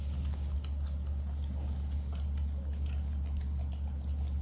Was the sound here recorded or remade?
recorded